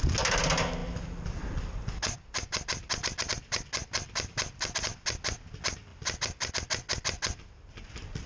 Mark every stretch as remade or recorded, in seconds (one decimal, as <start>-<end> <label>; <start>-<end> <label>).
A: 0.0-0.8 recorded; 0.8-5.2 remade; 5.2-5.9 recorded; 5.9-6.5 remade; 6.5-8.3 recorded